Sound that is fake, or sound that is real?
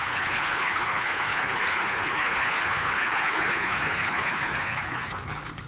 fake